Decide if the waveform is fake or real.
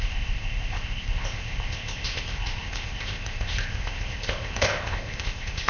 fake